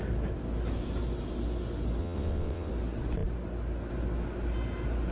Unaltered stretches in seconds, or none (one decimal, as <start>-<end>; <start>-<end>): 0.0-2.0; 2.7-5.1